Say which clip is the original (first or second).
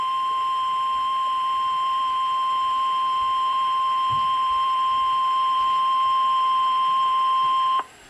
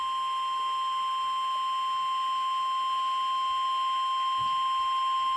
second